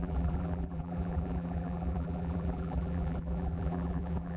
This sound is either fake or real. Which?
fake